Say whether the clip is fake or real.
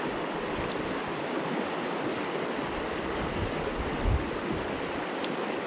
real